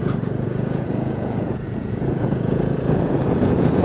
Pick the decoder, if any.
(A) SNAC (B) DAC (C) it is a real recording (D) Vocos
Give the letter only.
D